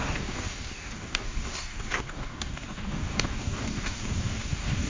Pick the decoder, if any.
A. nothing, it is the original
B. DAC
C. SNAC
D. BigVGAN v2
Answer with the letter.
B